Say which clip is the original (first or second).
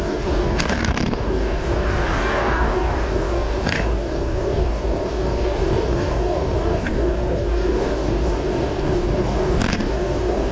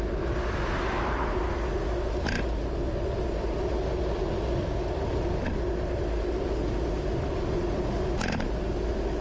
second